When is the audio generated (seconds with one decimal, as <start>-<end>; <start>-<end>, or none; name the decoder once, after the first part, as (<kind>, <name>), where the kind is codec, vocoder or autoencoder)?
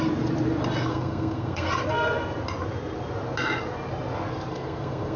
0.9-1.7 (codec, SNAC); 4.5-5.2